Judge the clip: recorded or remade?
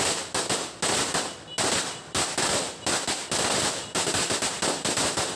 recorded